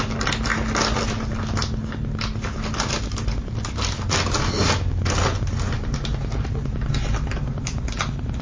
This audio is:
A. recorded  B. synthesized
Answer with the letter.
A